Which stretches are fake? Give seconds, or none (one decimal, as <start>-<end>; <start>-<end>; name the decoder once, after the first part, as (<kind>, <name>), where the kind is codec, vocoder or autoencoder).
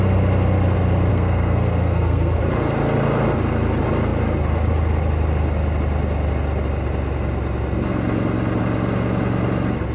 1.1-2.4 (codec, SNAC)